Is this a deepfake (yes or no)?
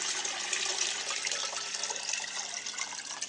no